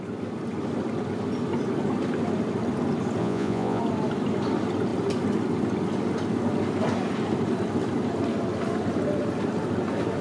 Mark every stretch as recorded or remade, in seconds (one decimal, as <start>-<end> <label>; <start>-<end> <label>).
0.0-3.2 recorded; 3.2-3.8 remade; 3.8-10.2 recorded